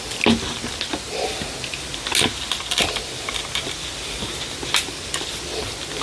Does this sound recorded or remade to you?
recorded